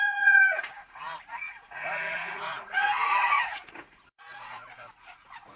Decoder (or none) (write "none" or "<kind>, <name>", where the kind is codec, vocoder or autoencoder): vocoder, Vocos